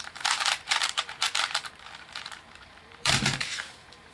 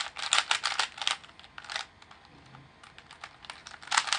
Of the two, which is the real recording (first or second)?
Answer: second